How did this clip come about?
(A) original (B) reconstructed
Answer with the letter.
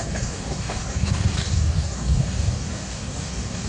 B